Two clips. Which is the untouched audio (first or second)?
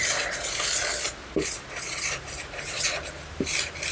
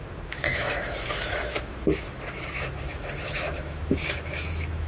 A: first